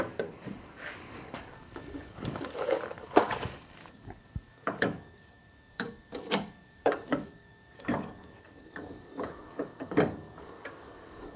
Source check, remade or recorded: remade